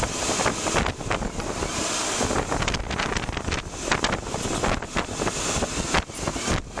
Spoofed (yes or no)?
no